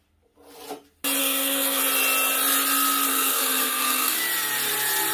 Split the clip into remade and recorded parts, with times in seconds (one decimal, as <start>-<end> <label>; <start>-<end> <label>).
0.0-1.2 recorded; 1.2-1.8 remade; 1.8-3.1 recorded; 3.1-4.2 remade; 4.2-5.1 recorded